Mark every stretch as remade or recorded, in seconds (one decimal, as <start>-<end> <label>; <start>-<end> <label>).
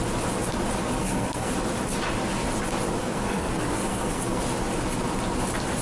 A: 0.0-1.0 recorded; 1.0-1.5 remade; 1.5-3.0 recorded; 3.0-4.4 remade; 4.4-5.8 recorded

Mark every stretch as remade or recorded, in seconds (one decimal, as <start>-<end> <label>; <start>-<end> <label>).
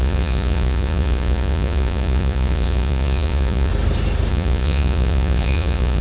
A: 0.0-3.7 remade; 3.7-4.3 recorded; 4.3-6.0 remade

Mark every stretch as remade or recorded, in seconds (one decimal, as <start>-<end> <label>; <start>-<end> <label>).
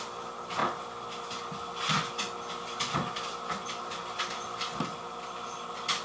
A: 0.0-6.0 recorded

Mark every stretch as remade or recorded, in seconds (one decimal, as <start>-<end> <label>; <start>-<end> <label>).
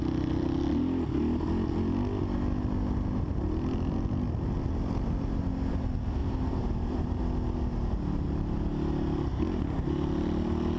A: 0.0-6.2 recorded; 6.2-7.2 remade; 7.2-10.8 recorded